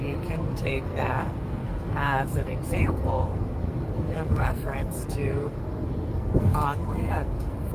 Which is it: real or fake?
fake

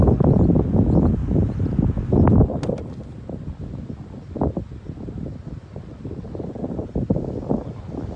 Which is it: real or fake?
real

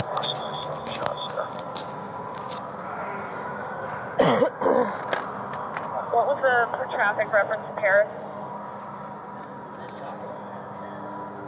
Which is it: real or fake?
real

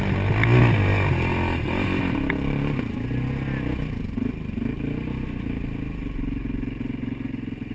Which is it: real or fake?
real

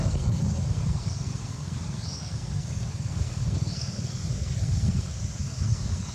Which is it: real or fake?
fake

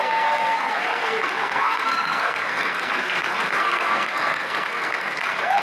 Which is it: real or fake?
fake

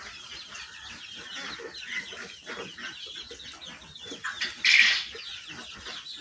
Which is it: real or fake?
real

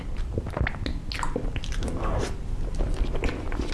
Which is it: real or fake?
real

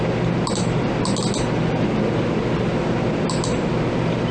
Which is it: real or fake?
real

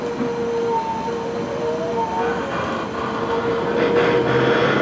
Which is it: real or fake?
real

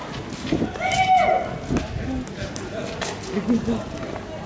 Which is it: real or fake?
real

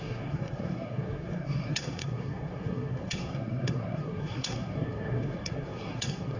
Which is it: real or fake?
fake